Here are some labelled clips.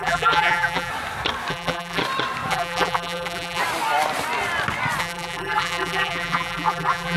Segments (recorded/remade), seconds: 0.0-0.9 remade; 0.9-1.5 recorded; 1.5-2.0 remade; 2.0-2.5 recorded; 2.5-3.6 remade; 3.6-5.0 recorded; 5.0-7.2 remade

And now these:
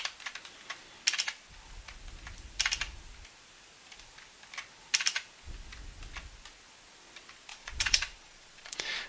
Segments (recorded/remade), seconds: 0.0-7.5 recorded; 7.5-9.1 remade

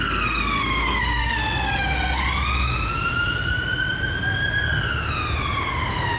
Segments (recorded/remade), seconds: 0.0-2.2 remade; 2.2-6.2 recorded

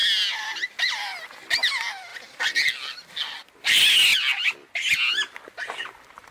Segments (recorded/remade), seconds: 0.0-6.3 recorded

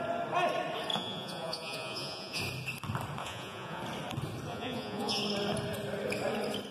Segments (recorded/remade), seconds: 0.0-0.9 recorded; 0.9-2.4 remade; 2.4-3.2 recorded; 3.2-3.8 remade; 3.8-4.5 recorded; 4.5-5.2 remade; 5.2-6.7 recorded

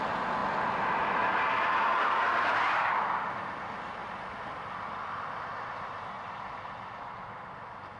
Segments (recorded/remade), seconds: 0.0-8.0 recorded